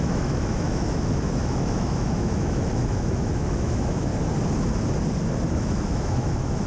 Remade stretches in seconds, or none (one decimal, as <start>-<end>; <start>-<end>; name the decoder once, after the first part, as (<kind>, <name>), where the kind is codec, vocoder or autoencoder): 0.0-4.1 (autoencoder, DAC-VAE); 5.5-6.7